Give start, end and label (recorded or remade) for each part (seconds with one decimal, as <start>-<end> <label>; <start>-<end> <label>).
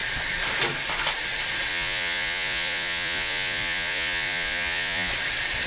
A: 0.0-1.7 recorded; 1.7-5.1 remade; 5.1-5.7 recorded